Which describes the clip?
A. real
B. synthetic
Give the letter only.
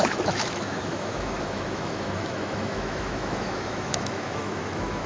B